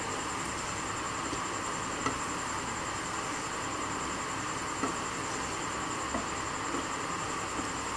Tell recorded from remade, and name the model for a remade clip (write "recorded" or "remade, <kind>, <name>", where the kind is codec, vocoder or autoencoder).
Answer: recorded